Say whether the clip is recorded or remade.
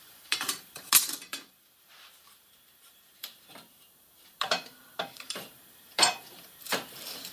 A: remade